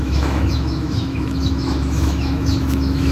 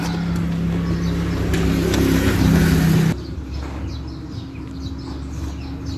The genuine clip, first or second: second